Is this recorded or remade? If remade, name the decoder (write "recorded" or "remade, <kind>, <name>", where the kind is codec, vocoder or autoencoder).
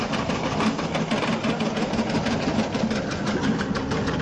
recorded